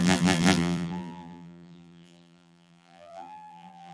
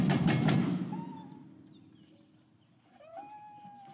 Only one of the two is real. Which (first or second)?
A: second